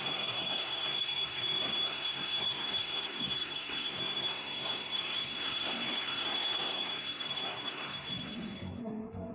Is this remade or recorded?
remade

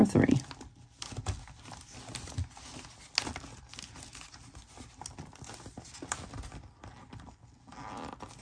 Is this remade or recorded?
recorded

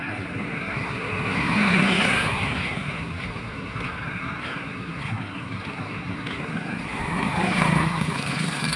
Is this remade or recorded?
remade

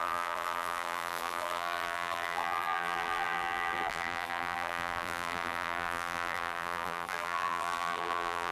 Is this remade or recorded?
remade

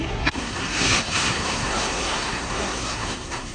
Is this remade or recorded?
remade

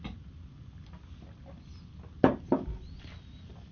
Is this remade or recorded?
recorded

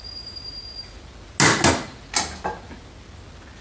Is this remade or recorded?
recorded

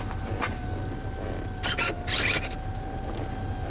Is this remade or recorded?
recorded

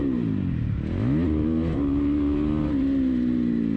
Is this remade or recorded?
recorded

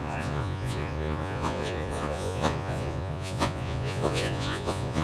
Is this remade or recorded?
remade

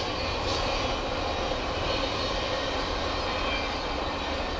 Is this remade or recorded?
recorded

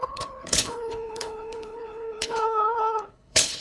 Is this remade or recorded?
remade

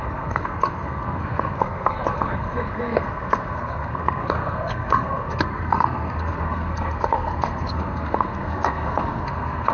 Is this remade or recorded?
remade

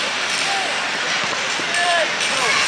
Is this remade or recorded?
recorded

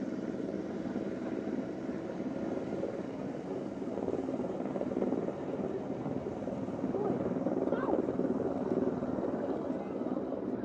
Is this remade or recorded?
remade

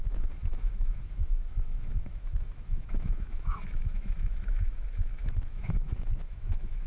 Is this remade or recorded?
remade